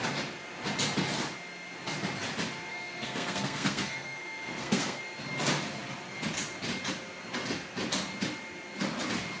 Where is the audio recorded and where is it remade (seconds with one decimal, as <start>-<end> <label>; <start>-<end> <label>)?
0.0-2.7 recorded; 2.7-5.0 remade; 5.0-9.4 recorded